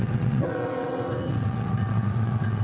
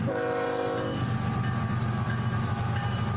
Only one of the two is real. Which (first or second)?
second